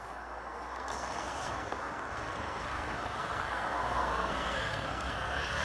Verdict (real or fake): fake